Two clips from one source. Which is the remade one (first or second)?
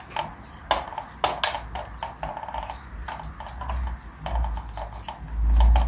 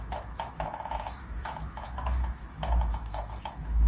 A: second